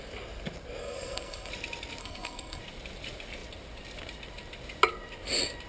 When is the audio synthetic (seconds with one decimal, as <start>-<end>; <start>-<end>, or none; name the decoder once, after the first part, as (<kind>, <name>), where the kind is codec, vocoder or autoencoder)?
0.8-1.5 (codec, SNAC); 2.0-2.6